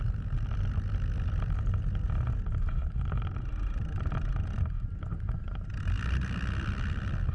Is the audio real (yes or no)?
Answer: yes